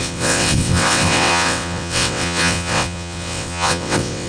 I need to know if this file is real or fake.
fake